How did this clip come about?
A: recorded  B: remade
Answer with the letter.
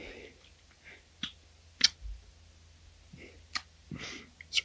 A